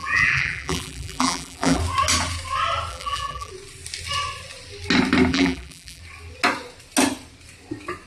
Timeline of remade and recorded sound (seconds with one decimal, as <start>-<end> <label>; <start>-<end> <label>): 0.0-1.8 remade; 1.8-2.9 recorded; 2.9-3.5 remade; 3.5-5.3 recorded; 5.3-6.0 remade; 6.0-8.1 recorded

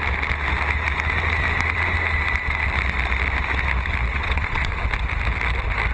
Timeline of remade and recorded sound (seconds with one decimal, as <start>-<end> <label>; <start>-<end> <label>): 0.0-4.1 recorded; 4.1-4.7 remade; 4.7-5.9 recorded